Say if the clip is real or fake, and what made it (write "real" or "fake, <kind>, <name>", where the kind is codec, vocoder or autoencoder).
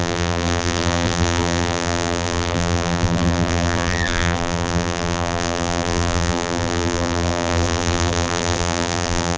fake, vocoder, BigVGAN v2